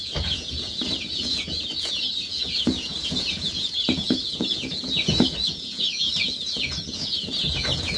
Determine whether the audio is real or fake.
fake